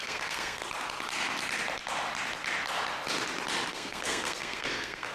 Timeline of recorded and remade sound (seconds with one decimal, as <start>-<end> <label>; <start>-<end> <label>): 0.0-0.6 remade; 0.6-3.7 recorded; 3.7-5.1 remade